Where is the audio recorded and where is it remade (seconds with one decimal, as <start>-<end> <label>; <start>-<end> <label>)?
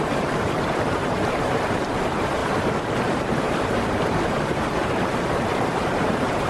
0.0-2.4 remade; 2.4-3.0 recorded; 3.0-6.5 remade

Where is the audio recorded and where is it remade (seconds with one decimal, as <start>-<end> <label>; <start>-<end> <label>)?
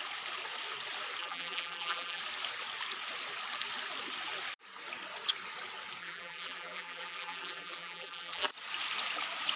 0.0-1.2 recorded; 1.2-2.2 remade; 2.2-6.0 recorded; 6.0-8.5 remade; 8.5-9.6 recorded